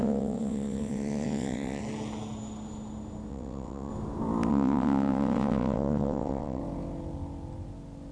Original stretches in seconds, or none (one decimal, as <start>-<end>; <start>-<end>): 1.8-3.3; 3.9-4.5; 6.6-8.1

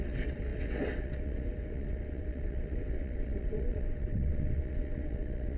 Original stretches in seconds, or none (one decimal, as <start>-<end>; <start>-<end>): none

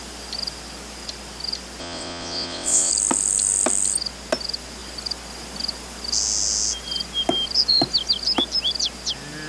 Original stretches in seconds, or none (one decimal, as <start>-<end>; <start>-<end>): 0.0-1.8; 2.9-9.5

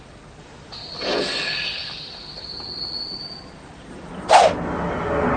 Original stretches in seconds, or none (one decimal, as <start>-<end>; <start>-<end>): 0.0-5.4

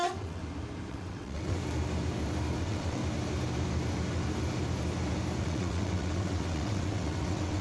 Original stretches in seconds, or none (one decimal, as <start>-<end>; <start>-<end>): 0.4-0.9; 1.6-2.6; 3.0-5.4